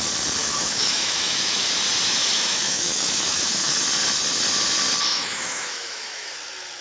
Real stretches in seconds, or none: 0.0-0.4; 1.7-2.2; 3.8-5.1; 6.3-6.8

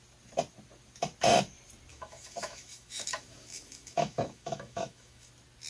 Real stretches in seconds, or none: 0.0-1.9; 5.3-5.7

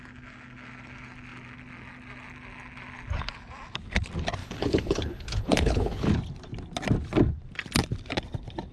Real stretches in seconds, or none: 0.0-4.4; 6.1-8.7

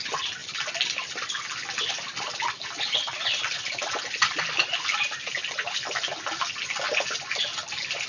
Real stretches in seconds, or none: 0.0-8.1